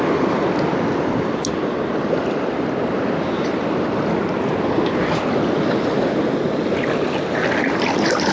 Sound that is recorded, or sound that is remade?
recorded